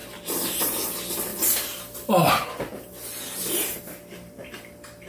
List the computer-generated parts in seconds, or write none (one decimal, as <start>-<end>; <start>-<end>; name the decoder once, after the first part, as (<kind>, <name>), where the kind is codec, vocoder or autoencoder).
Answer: 0.0-0.8 (vocoder, BigVGAN v2); 2.7-3.8